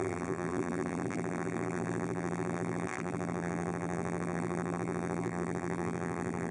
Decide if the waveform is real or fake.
fake